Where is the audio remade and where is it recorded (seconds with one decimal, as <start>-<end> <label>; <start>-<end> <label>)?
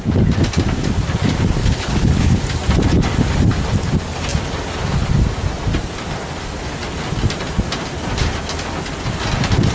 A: 0.0-1.6 recorded; 1.6-2.4 remade; 2.4-9.7 recorded